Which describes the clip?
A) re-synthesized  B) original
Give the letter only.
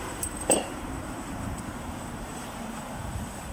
A